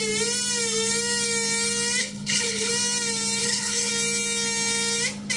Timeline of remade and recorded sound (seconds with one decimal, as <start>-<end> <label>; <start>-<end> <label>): 0.0-2.0 recorded; 2.0-2.7 remade; 2.7-3.4 recorded; 3.4-3.9 remade; 3.9-5.4 recorded